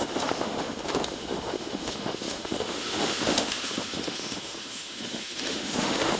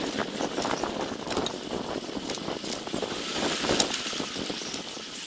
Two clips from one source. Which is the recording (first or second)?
second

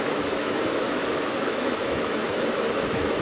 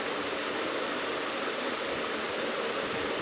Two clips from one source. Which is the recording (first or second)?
second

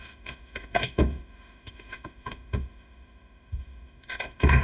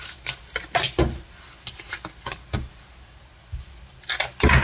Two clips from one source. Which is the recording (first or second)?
second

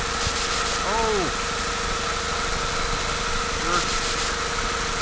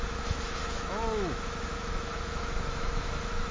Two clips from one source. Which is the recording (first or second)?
first